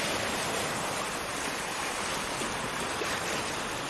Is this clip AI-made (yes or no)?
no